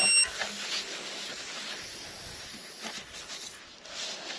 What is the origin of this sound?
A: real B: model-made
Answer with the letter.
A